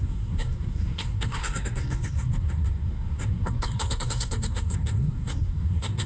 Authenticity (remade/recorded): remade